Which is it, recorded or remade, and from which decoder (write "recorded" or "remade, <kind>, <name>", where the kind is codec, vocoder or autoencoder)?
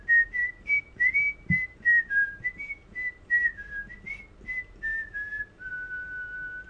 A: recorded